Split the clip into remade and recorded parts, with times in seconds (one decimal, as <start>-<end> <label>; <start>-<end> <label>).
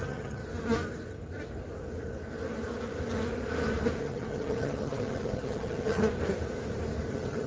0.0-0.4 remade; 0.4-4.0 recorded; 4.0-6.0 remade; 6.0-7.1 recorded; 7.1-7.5 remade